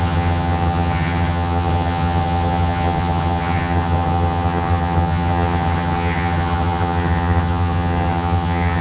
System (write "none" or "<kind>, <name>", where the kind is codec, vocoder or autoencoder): vocoder, HiFi-GAN